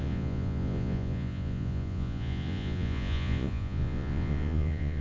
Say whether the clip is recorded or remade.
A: remade